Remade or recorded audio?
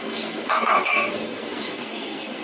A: remade